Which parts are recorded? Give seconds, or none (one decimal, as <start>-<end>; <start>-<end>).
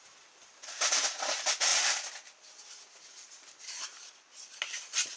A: 0.0-5.2